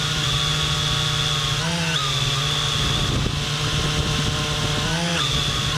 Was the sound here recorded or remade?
recorded